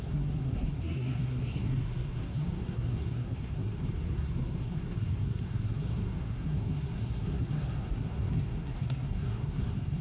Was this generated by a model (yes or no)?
yes